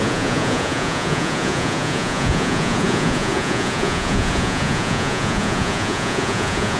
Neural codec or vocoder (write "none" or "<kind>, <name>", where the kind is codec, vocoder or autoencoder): vocoder, Vocos